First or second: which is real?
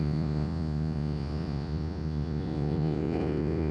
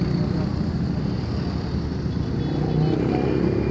second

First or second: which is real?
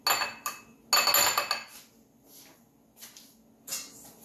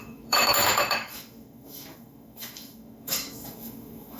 first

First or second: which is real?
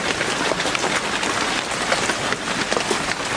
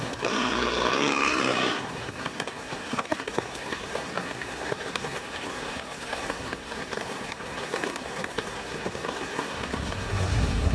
first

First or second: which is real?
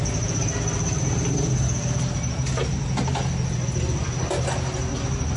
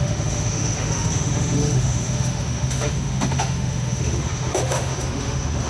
first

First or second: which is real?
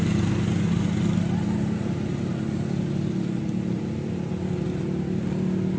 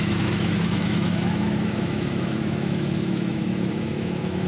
first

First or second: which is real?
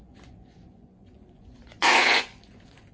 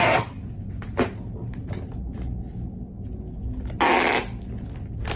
second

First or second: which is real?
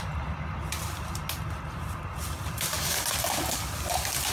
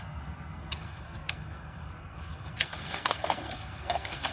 first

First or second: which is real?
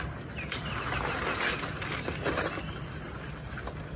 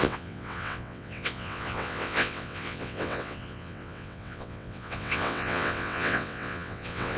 first